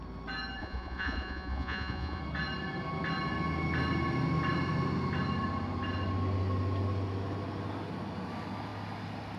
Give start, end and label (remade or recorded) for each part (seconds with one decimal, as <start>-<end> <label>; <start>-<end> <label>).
0.0-0.6 recorded; 0.6-2.2 remade; 2.2-9.4 recorded